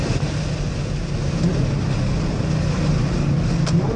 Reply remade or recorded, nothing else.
recorded